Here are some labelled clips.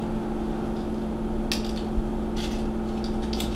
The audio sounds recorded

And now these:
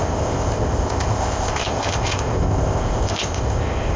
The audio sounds remade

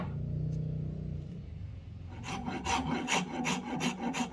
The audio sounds recorded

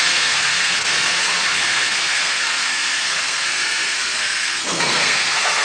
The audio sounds remade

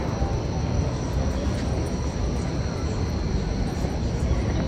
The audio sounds recorded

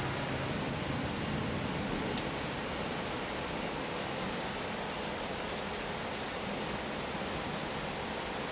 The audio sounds recorded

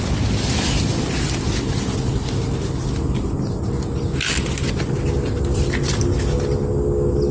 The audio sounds recorded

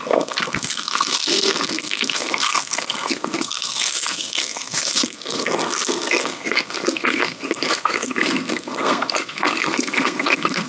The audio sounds remade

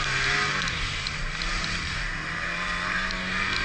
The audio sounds remade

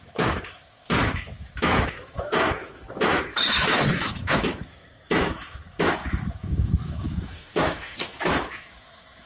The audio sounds remade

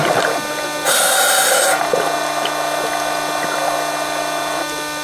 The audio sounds recorded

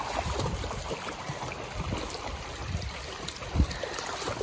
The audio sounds remade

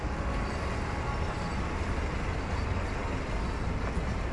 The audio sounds recorded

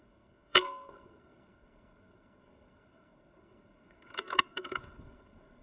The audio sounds remade